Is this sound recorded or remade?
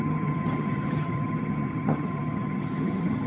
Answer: remade